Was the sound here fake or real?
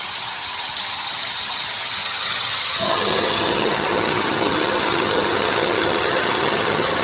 fake